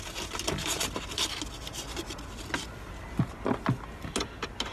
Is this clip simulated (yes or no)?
no